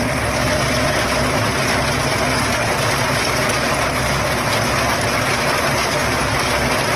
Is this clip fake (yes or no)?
no